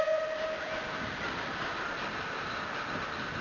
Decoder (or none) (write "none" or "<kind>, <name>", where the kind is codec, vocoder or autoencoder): none